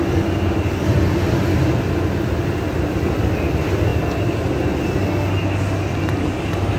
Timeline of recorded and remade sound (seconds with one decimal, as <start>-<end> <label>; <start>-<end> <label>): 0.0-6.8 recorded